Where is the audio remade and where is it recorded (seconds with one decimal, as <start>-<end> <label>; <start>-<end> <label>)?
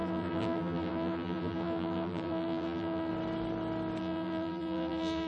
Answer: 0.0-3.1 remade; 3.1-4.0 recorded; 4.0-5.3 remade